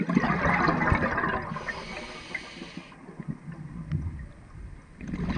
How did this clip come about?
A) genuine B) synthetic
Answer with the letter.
A